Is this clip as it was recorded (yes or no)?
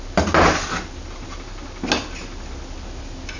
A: yes